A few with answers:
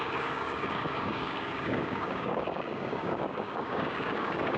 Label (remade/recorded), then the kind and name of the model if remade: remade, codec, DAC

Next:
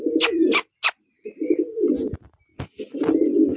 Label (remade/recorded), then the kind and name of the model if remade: recorded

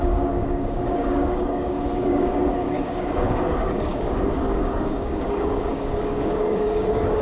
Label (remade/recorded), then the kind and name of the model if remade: remade, codec, DAC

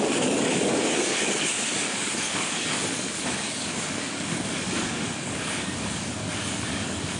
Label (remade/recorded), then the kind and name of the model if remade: remade, codec, DAC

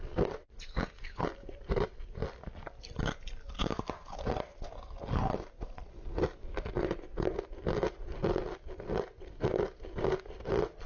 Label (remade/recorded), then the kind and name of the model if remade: recorded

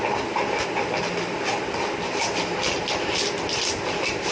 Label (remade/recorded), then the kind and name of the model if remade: recorded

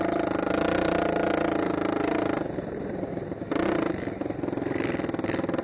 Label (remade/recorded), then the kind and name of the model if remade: recorded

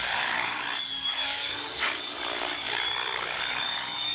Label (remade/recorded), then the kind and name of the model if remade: remade, codec, DAC